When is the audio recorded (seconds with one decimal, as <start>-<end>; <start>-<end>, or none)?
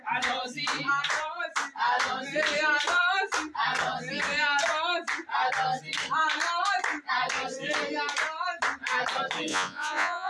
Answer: 0.0-9.5